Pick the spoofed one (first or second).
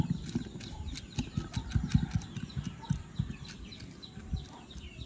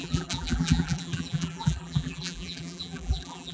second